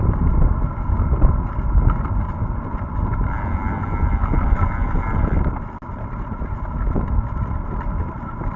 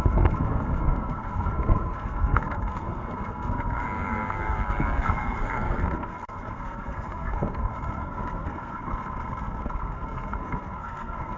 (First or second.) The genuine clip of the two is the first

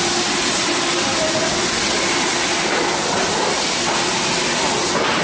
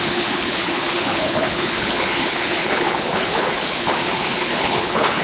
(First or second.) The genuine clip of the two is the first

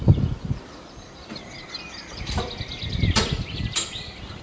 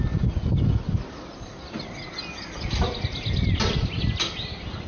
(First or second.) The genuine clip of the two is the second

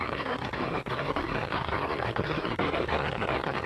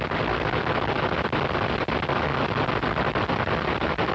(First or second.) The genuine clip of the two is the second